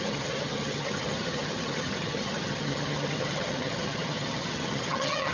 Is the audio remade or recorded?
remade